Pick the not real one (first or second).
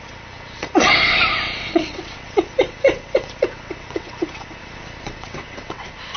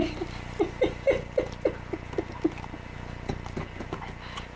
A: first